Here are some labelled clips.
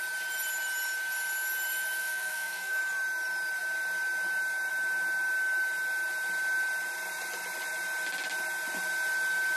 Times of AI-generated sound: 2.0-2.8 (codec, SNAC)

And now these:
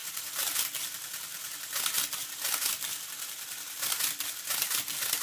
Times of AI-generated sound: 0.0-0.6 (vocoder, BigVGAN v2)

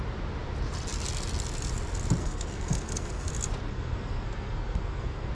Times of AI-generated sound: 2.2-3.3 (codec, SNAC); 3.7-5.3

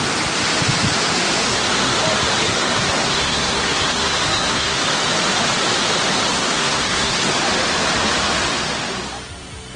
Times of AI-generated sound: 2.5-4.8 (codec, SNAC); 6.3-7.3

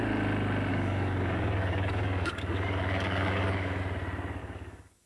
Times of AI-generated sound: 0.7-3.8 (codec, DAC); 4.4-5.1

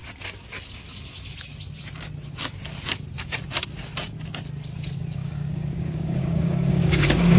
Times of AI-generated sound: 5.2-7.4 (codec, DAC)

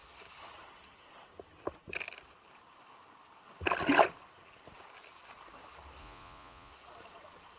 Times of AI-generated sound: 6.0-6.7 (vocoder, Vocos)